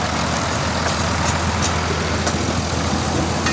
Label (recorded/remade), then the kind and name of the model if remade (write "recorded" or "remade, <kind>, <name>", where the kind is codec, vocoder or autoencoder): recorded